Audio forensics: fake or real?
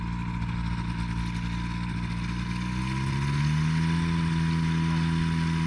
real